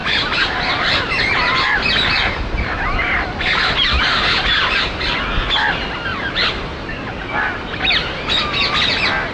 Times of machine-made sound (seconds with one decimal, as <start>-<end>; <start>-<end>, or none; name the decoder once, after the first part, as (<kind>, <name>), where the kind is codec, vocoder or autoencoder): 0.0-4.6 (vocoder, BigVGAN v2); 6.1-7.1